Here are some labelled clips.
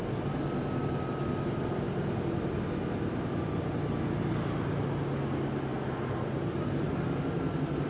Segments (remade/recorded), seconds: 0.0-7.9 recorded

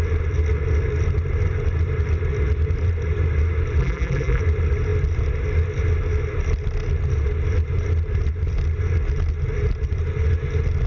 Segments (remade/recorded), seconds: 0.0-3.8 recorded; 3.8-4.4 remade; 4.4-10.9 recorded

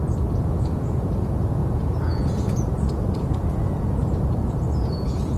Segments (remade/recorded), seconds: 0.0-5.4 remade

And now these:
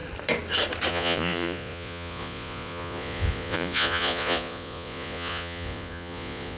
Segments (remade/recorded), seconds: 0.0-0.9 recorded; 0.9-6.6 remade

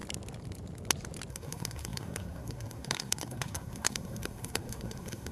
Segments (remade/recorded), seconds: 0.0-1.3 recorded; 1.3-5.3 remade

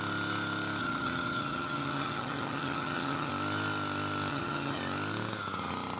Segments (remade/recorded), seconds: 0.0-0.8 recorded; 0.8-3.3 remade; 3.3-4.3 recorded; 4.3-4.8 remade; 4.8-6.0 recorded